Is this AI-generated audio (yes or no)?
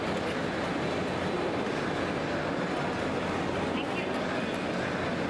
no